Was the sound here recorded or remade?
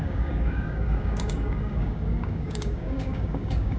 remade